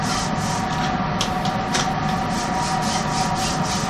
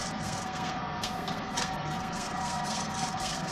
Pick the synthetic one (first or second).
second